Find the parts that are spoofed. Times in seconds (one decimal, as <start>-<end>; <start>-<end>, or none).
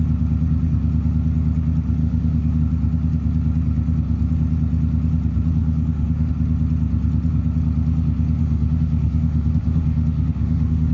2.0-2.6; 5.6-6.3; 8.4-10.9